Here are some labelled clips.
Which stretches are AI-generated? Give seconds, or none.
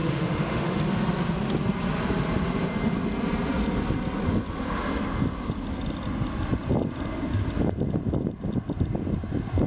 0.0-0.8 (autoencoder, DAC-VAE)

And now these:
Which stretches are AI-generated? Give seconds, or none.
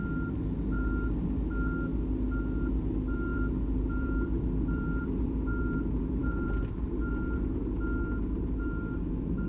3.3-5.6 (vocoder, BigVGAN v2); 6.2-6.8